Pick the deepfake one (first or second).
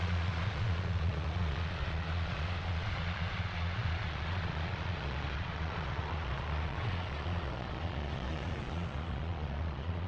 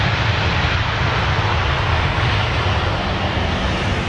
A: first